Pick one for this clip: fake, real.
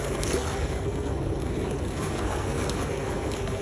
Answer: fake